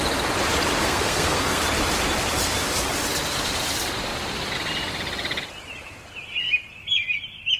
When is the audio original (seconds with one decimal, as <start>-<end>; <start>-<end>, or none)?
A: 0.0-0.8; 1.6-7.6